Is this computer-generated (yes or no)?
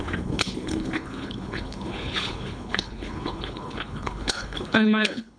yes